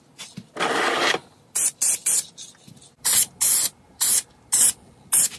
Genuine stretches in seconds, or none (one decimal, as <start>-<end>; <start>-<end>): 0.0-5.4